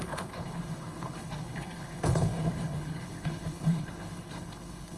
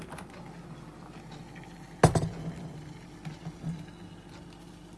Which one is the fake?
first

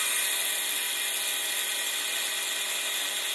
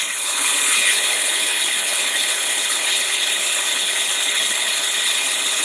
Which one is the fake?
second